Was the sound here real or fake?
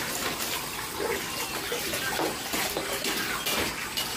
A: real